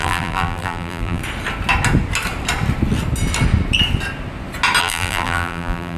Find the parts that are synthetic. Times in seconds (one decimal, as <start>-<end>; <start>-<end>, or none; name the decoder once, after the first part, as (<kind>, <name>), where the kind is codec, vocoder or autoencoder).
0.0-1.2 (vocoder, BigVGAN v2); 4.8-6.0